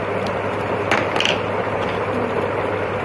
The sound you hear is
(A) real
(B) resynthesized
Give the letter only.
A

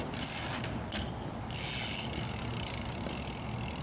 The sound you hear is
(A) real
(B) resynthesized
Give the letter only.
A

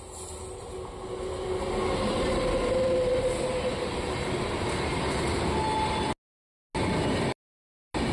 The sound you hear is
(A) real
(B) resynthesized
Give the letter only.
A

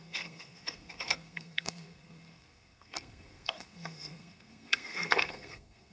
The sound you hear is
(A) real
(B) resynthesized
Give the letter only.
B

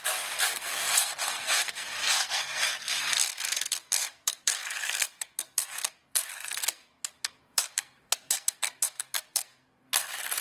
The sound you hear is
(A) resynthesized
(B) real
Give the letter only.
A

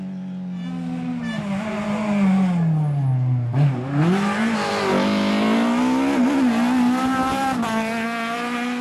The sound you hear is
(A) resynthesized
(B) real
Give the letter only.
B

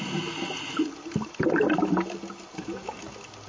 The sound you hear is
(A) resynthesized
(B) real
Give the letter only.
B